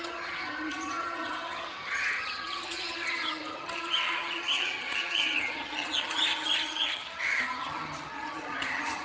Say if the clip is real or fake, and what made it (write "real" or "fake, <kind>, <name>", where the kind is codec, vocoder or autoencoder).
fake, vocoder, HiFi-GAN